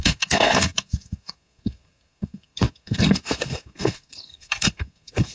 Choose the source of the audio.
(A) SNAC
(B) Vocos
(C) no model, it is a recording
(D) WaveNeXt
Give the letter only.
A